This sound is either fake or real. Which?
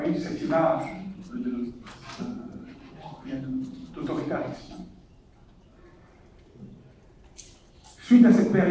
real